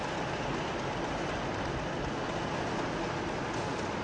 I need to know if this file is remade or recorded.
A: recorded